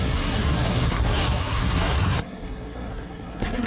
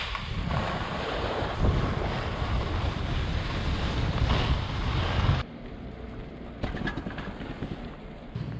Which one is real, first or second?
second